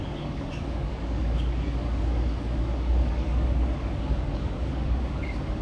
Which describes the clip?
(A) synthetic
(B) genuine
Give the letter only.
A